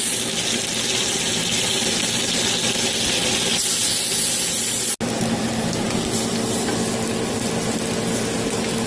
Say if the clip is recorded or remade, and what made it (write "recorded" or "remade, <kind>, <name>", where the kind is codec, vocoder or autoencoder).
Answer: recorded